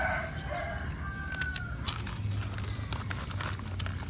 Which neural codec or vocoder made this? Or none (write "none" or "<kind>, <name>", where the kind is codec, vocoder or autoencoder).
none